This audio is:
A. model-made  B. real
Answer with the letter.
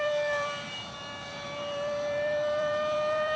A